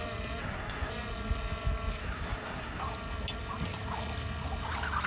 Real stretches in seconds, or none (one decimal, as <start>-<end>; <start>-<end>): 0.0-0.4; 0.9-2.0; 2.8-5.1